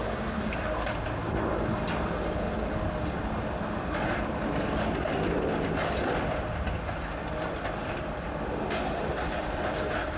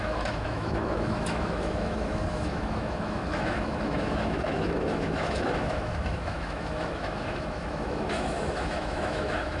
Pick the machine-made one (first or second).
second